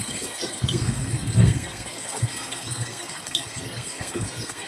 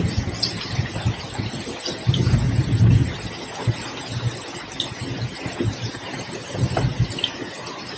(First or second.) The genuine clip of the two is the second